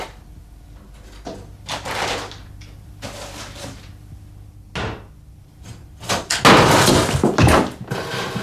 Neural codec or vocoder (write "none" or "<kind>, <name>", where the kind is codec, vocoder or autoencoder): none